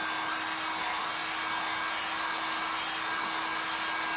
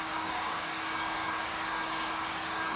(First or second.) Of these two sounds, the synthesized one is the second